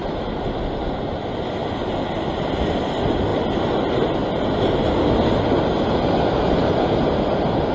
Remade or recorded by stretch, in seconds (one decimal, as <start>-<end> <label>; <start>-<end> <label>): 0.0-7.7 recorded